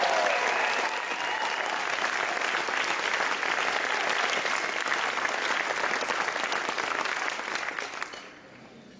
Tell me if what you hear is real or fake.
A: real